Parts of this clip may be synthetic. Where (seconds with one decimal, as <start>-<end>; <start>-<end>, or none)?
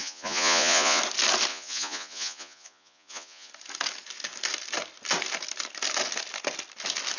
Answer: 0.0-1.0; 1.5-3.5